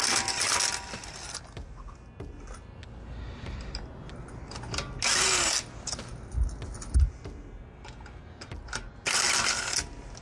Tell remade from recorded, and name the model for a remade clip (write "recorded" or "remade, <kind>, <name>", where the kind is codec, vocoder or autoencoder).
recorded